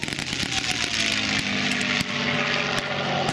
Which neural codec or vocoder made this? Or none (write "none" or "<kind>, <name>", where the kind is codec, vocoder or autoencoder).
none